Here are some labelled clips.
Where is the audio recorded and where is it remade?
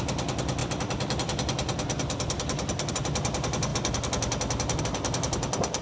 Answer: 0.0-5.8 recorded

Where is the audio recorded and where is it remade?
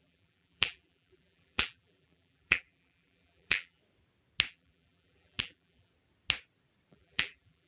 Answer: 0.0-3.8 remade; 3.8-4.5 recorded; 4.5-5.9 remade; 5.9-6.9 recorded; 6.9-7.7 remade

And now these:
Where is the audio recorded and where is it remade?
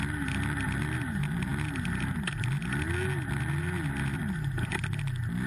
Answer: 0.0-5.5 recorded